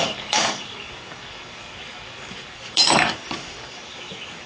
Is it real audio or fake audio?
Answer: fake